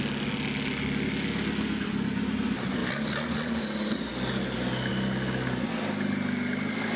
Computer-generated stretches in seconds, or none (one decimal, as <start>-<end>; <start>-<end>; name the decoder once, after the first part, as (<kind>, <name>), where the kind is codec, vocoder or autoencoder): none